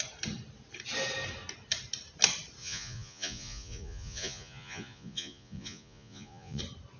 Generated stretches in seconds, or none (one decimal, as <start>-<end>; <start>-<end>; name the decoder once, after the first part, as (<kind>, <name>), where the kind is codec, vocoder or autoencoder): 2.6-6.6 (vocoder, Vocos)